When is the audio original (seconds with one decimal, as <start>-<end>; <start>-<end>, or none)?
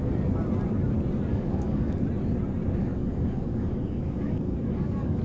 0.0-1.3; 2.0-2.8